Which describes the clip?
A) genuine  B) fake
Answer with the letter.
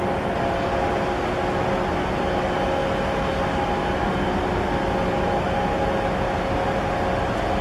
A